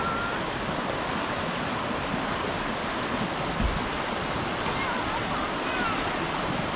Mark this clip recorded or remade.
recorded